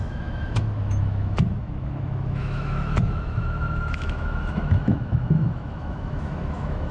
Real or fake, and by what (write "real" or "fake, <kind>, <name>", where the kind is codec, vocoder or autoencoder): fake, autoencoder, DAC-VAE